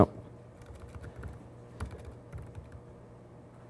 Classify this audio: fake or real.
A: real